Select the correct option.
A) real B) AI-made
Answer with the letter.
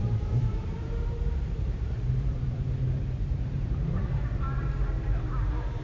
B